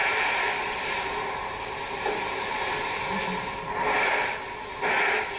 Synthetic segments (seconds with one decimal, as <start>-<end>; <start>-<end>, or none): 0.0-3.2